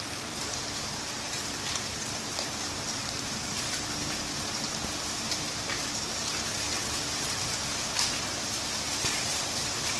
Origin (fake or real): fake